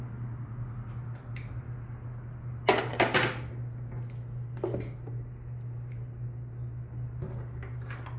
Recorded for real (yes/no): yes